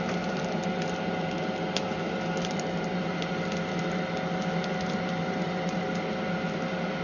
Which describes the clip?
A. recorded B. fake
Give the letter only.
A